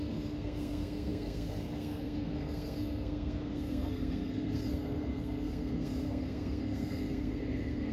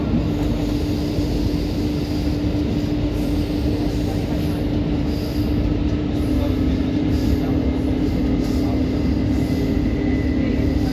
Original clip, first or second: second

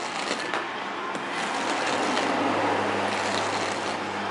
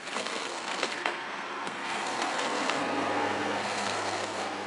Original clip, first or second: first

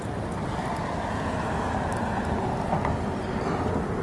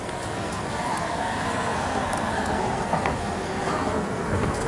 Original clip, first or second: first